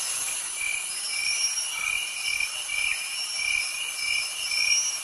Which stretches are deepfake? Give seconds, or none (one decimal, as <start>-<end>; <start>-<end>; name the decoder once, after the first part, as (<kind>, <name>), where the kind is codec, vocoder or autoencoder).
none